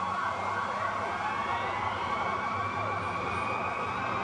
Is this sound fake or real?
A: real